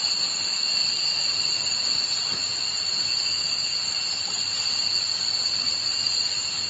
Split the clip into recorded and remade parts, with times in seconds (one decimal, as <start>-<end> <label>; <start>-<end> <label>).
0.0-6.7 recorded

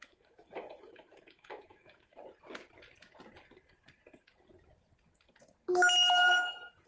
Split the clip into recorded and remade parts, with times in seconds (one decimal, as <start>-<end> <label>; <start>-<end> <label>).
0.0-2.2 remade; 2.2-6.3 recorded; 6.3-6.9 remade

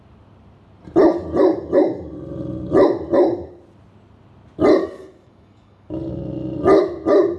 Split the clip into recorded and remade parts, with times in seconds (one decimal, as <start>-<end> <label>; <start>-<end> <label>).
0.0-4.8 recorded; 4.8-5.9 remade; 5.9-7.4 recorded

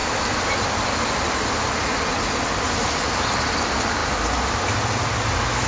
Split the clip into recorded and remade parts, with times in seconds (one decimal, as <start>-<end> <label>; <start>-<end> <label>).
0.0-5.7 recorded

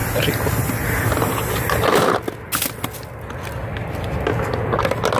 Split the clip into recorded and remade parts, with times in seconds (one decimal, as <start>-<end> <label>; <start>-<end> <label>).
0.0-5.2 recorded

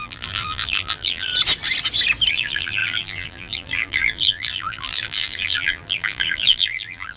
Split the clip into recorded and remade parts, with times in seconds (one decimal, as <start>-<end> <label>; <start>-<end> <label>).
0.0-1.3 remade; 1.3-2.3 recorded; 2.3-7.2 remade

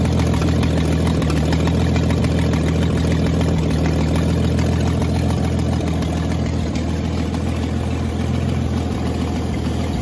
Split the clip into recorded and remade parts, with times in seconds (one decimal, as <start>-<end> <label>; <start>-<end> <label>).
0.0-10.0 recorded

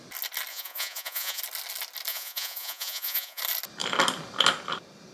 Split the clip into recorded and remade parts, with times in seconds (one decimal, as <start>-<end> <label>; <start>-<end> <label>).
0.0-0.5 recorded; 0.5-1.4 remade; 1.4-2.1 recorded; 2.1-3.4 remade; 3.4-5.1 recorded